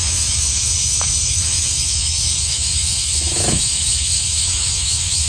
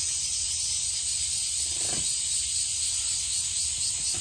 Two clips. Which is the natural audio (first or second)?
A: second